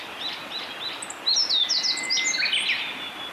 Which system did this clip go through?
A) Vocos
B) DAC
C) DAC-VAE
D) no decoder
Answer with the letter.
D